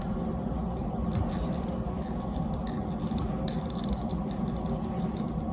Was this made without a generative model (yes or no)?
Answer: yes